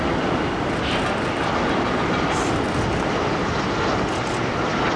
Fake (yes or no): no